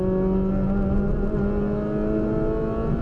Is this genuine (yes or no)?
yes